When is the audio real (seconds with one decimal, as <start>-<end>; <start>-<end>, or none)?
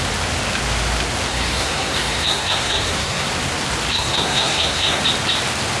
0.0-1.3; 3.3-3.9; 5.0-5.8